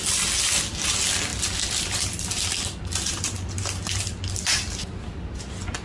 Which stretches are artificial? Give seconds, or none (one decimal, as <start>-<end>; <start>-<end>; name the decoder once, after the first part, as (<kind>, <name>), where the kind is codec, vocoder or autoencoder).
1.3-4.8 (vocoder, BigVGAN v2)